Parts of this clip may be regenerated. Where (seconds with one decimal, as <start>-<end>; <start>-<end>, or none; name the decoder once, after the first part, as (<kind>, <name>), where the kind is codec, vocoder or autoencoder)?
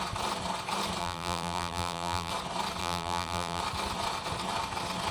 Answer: 1.0-2.3 (vocoder, BigVGAN v2); 2.8-3.6